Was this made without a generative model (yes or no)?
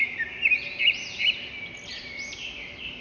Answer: yes